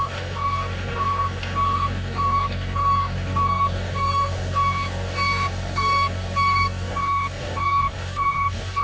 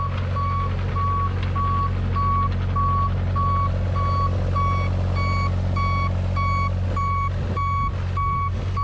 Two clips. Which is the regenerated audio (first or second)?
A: first